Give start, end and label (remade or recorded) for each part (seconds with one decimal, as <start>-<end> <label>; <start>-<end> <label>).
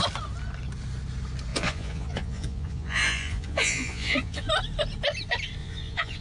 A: 0.0-1.5 recorded; 1.5-4.5 remade; 4.5-5.6 recorded; 5.6-6.2 remade